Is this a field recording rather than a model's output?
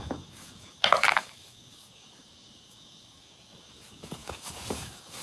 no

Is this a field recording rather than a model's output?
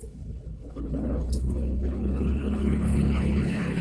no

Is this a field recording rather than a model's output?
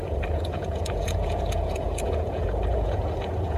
no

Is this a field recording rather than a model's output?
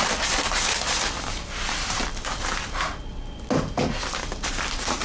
yes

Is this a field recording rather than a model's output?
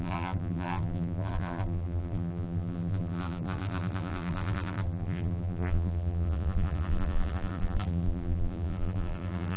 no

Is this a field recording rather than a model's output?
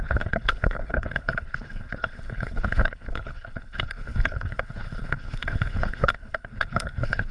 no